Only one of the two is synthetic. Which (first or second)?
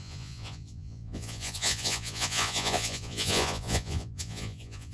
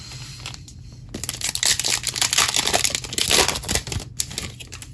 first